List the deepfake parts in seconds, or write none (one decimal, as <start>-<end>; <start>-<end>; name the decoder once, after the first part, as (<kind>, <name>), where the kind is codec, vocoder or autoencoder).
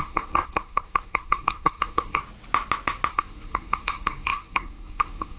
0.0-2.2 (codec, SNAC); 3.1-5.4